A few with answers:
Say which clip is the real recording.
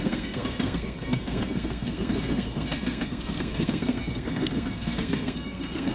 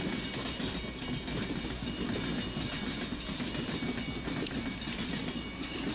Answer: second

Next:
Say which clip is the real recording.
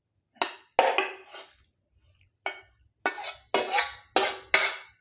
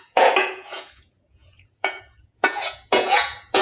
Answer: first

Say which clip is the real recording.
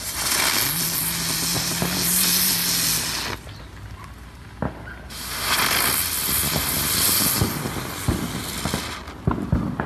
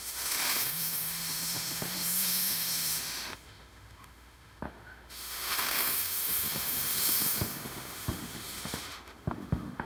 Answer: first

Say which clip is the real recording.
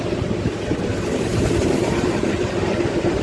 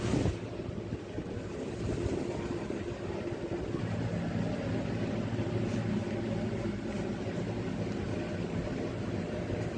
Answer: second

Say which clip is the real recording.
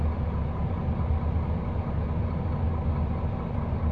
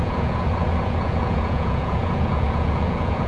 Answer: first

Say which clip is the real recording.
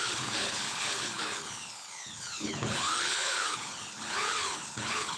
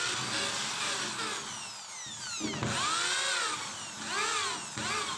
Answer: second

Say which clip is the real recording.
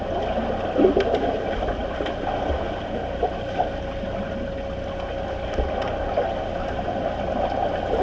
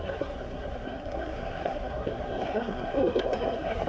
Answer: first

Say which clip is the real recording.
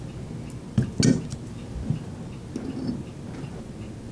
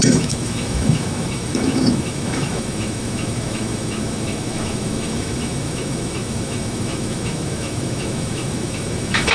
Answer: first